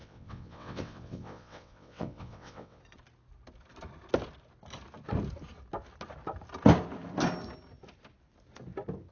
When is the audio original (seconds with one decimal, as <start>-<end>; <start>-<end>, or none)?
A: 2.8-9.1